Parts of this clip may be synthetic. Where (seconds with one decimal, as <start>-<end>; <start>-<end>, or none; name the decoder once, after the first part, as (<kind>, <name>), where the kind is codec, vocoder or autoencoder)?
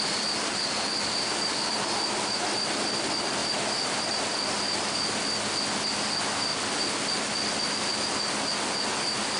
0.0-6.5 (vocoder, BigVGAN v2); 7.5-9.4